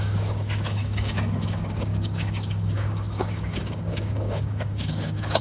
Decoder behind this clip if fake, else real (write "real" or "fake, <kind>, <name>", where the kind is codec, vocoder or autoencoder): fake, codec, DAC